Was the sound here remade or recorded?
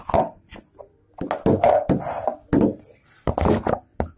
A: recorded